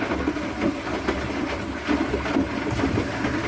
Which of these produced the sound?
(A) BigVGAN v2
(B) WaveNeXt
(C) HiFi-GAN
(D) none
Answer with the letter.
D